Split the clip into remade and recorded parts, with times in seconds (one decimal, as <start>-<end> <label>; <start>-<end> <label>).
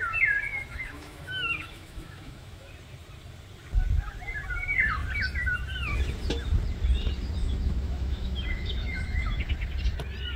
0.0-0.5 recorded; 0.5-2.7 remade; 2.7-7.4 recorded; 7.4-9.5 remade; 9.5-10.4 recorded